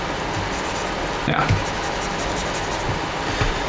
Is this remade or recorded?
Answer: recorded